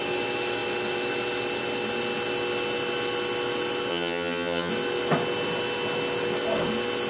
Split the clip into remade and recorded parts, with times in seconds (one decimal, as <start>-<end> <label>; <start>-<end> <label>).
0.0-3.9 recorded; 3.9-4.7 remade; 4.7-7.1 recorded